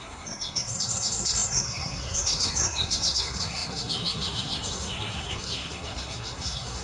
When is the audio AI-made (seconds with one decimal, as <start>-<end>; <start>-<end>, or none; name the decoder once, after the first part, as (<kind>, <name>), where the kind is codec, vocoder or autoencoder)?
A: 0.0-6.8 (codec, SNAC)